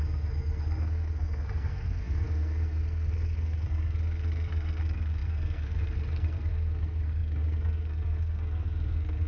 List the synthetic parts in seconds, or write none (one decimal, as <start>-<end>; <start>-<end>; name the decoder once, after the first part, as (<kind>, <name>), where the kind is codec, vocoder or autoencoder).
0.0-9.3 (codec, SNAC)